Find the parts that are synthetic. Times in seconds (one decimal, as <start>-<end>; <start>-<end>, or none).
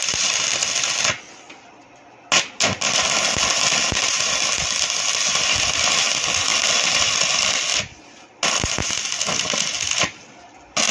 none